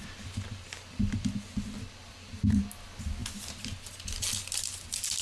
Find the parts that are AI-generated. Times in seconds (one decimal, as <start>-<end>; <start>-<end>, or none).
2.0-2.6